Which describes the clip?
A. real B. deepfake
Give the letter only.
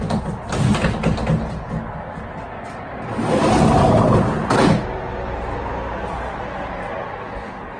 A